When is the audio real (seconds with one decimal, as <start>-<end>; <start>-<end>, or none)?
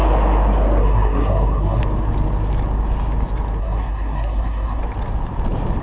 0.0-0.8; 1.8-3.6; 4.8-5.8